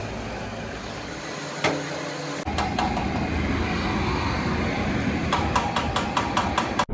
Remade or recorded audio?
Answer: recorded